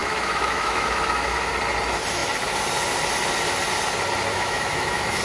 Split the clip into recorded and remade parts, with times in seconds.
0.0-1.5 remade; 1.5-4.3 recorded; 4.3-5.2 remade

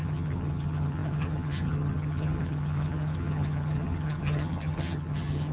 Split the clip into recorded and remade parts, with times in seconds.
0.0-5.5 remade

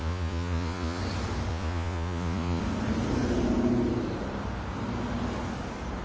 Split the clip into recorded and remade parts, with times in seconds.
0.0-1.0 remade; 1.0-1.5 recorded; 1.5-2.6 remade; 2.6-6.0 recorded

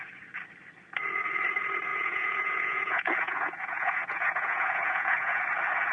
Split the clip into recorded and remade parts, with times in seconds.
0.0-1.9 recorded; 1.9-5.4 remade; 5.4-5.9 recorded